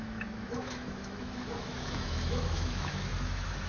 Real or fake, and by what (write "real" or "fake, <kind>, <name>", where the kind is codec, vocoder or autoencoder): fake, autoencoder, DAC-VAE